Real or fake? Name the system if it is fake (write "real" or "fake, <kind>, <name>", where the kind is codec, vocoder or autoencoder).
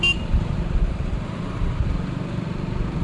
real